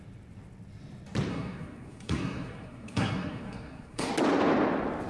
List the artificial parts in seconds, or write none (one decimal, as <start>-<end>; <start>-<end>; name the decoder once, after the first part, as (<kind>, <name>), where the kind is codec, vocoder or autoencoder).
1.3-4.1 (codec, SNAC)